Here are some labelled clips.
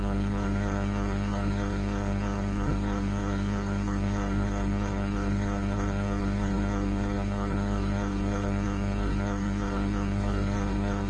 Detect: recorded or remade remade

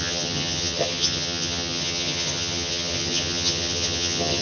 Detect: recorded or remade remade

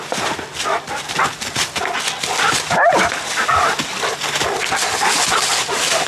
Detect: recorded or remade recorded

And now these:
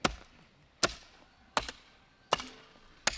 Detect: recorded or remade recorded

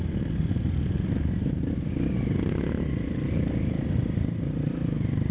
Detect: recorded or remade recorded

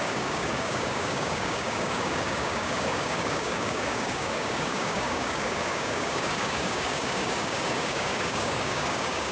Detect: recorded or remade remade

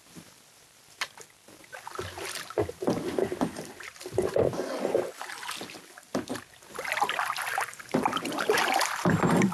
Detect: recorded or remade recorded